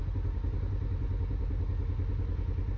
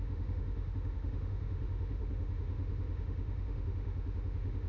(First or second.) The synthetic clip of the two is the second